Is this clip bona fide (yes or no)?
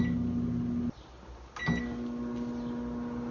yes